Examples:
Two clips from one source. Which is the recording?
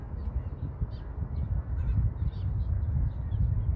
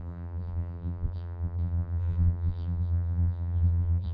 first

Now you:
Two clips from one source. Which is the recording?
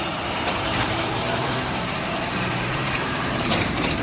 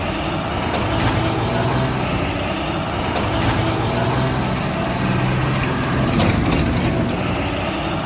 second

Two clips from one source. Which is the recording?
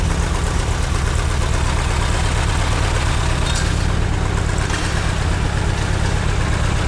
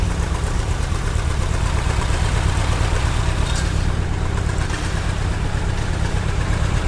first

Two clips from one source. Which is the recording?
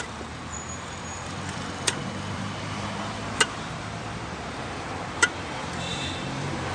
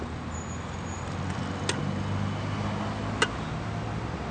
second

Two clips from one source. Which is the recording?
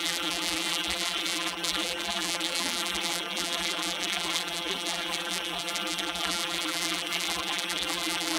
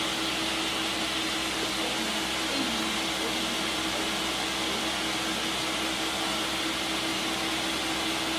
second